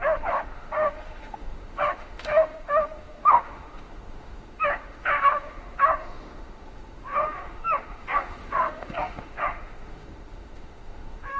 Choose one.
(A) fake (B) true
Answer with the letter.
A